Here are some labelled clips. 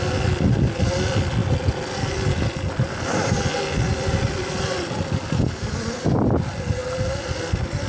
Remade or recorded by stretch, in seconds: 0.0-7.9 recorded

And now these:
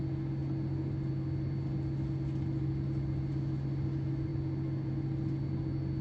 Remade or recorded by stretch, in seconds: 0.0-6.0 recorded

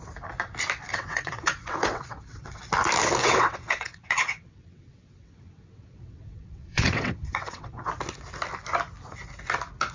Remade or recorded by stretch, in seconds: 0.0-0.9 recorded; 0.9-2.6 remade; 2.6-3.2 recorded; 3.2-7.9 remade; 7.9-9.9 recorded

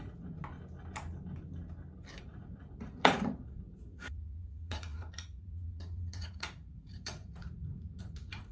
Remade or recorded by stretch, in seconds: 0.0-0.4 remade; 0.4-2.2 recorded; 2.2-8.5 remade

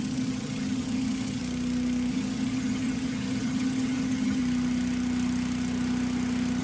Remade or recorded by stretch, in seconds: 0.0-1.4 remade; 1.4-2.1 recorded; 2.1-4.4 remade; 4.4-6.6 recorded

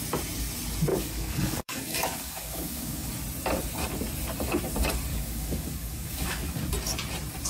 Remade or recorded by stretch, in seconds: 0.0-0.9 recorded; 0.9-3.1 remade; 3.1-5.1 recorded; 5.1-6.7 remade; 6.7-7.5 recorded